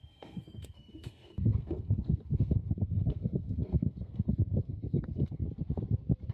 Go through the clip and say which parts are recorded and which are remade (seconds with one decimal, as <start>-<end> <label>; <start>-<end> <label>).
0.0-5.4 remade; 5.4-6.3 recorded